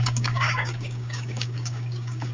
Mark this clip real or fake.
fake